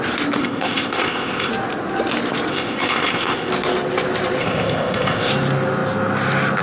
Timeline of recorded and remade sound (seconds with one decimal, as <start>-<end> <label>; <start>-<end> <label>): 0.0-0.4 recorded; 0.4-1.5 remade; 1.5-2.5 recorded; 2.5-3.5 remade; 3.5-4.4 recorded; 4.4-5.3 remade; 5.3-6.6 recorded